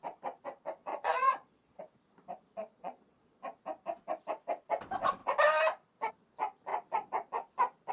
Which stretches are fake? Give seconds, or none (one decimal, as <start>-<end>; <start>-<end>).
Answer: 0.9-1.8; 2.6-3.4